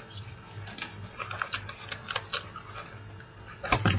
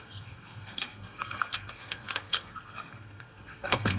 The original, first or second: first